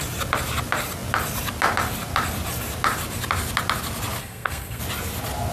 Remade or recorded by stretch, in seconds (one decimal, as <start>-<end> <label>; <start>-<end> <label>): 0.0-4.2 recorded; 4.2-4.8 remade; 4.8-5.5 recorded